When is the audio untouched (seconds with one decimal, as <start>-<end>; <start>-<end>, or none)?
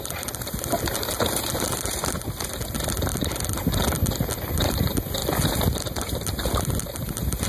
0.0-5.2